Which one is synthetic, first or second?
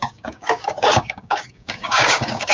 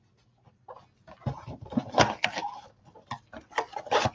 first